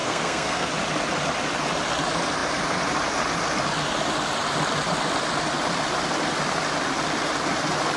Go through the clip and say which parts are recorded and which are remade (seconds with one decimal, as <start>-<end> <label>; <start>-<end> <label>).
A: 0.0-0.7 remade; 0.7-8.0 recorded